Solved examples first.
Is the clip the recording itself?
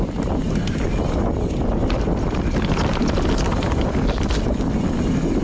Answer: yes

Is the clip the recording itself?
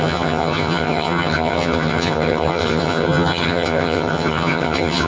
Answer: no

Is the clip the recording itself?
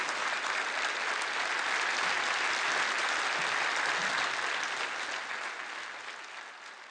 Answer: yes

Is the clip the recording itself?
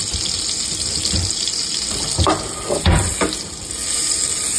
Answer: yes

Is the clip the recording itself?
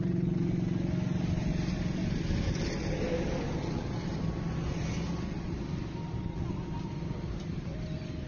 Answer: yes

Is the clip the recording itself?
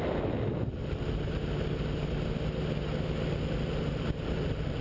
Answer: yes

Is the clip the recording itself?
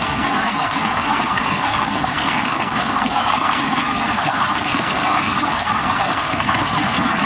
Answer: no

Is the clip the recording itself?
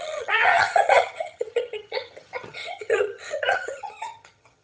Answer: no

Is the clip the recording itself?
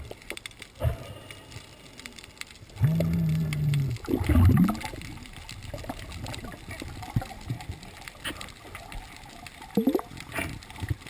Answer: yes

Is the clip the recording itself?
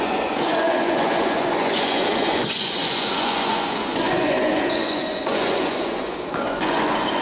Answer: no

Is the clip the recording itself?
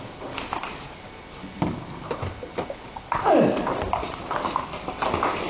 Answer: yes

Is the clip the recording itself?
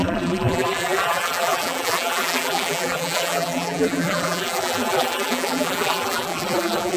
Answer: no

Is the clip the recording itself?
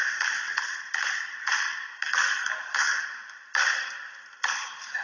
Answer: yes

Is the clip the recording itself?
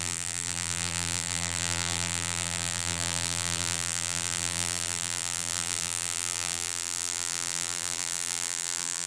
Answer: no